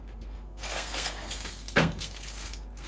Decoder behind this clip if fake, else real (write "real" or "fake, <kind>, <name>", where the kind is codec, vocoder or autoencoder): fake, codec, SNAC